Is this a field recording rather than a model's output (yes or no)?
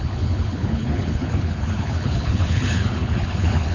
no